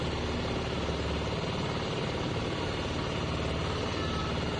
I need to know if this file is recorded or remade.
recorded